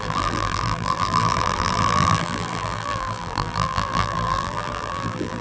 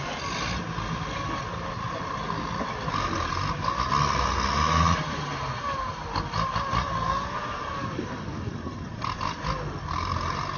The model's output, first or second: first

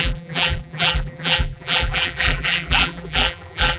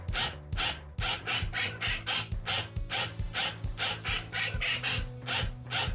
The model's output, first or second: first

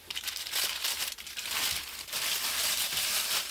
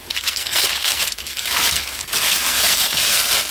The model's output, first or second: second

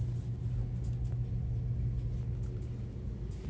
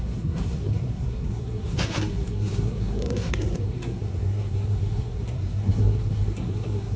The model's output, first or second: second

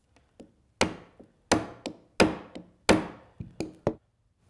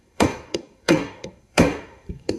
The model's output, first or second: second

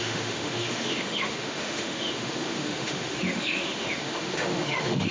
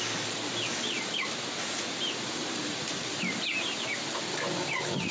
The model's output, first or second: first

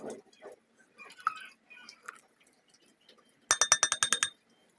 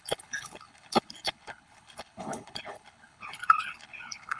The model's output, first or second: second